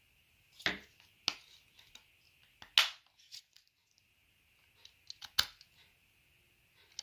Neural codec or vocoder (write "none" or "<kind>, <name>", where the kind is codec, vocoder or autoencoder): none